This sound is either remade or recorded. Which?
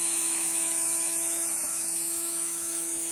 remade